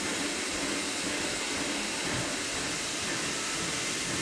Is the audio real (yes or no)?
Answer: yes